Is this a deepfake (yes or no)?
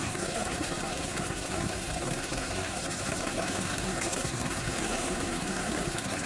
yes